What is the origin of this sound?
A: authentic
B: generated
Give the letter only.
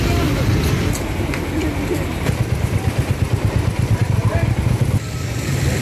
A